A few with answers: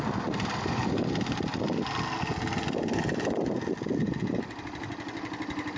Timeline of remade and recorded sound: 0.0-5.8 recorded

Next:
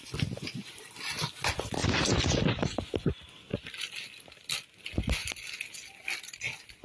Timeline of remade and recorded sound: 0.0-1.8 recorded; 1.8-2.4 remade; 2.4-6.8 recorded